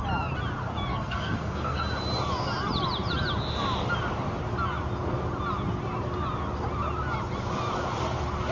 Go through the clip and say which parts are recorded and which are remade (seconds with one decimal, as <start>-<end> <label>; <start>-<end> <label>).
0.0-0.9 recorded; 0.9-1.8 remade; 1.8-8.5 recorded